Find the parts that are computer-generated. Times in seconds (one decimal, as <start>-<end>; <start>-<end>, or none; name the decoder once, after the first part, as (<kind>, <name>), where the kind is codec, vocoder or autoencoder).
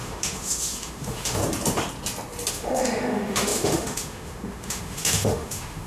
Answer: 0.0-1.4 (autoencoder, DAC-VAE); 2.5-5.9